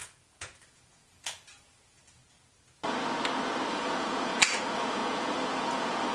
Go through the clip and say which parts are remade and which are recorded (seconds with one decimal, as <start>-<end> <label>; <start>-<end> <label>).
0.0-2.2 remade; 2.2-3.7 recorded; 3.7-6.1 remade